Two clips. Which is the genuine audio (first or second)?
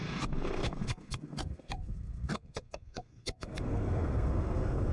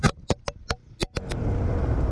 second